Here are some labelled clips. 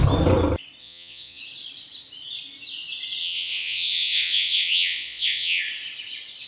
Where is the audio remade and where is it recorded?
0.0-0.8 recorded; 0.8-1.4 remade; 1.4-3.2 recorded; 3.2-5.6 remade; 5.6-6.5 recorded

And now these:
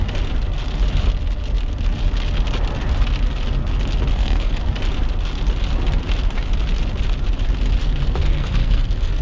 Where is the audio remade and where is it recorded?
0.0-4.1 recorded; 4.1-4.6 remade; 4.6-7.8 recorded; 7.8-9.2 remade